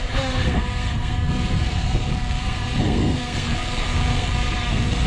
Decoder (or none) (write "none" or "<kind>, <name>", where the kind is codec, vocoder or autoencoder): codec, SNAC